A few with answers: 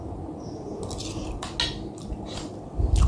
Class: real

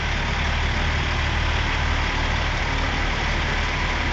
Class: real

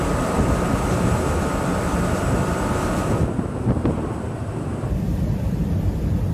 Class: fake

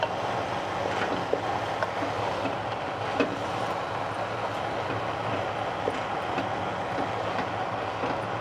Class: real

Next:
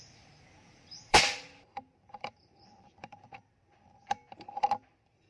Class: fake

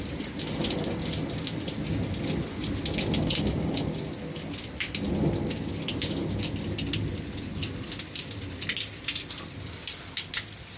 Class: real